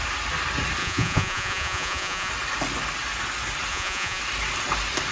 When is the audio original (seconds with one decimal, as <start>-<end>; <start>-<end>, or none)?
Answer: 0.0-0.8; 2.3-3.7; 4.2-5.1